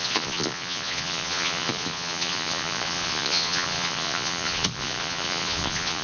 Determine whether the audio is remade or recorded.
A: remade